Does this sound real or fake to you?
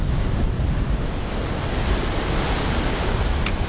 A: real